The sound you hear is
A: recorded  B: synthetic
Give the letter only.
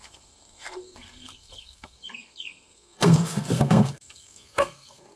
B